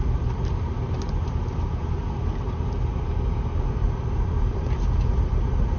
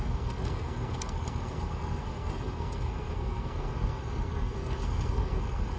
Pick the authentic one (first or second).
first